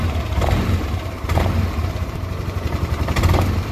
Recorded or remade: remade